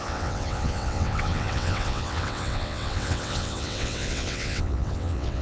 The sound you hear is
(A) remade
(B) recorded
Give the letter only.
A